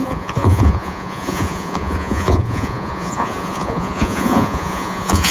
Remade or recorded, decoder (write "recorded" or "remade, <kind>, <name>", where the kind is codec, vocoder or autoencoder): remade, vocoder, Vocos